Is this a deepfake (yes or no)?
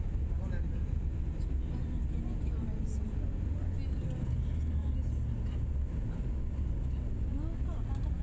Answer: no